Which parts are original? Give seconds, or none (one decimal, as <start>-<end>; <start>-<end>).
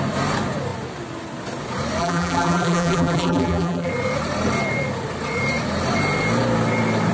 0.0-2.0; 3.9-7.1